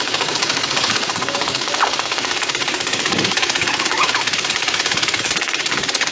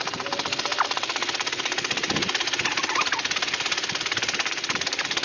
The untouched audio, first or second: second